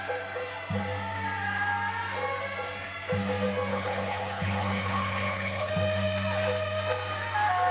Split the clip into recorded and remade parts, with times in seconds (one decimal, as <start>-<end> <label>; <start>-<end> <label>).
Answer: 0.0-3.7 recorded; 3.7-5.7 remade; 5.7-7.7 recorded